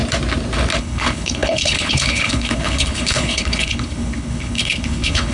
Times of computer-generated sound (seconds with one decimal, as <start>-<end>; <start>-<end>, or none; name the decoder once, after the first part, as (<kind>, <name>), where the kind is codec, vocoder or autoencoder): 0.8-5.3 (codec, HILCodec)